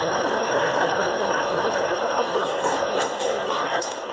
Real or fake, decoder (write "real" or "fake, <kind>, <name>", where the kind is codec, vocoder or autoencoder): fake, codec, SNAC